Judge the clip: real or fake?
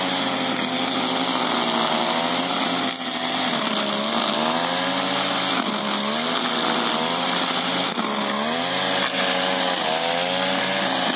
real